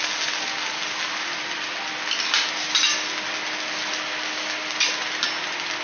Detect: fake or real real